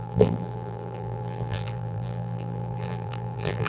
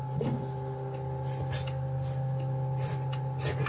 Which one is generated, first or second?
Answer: first